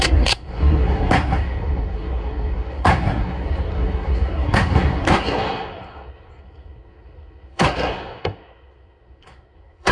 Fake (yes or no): yes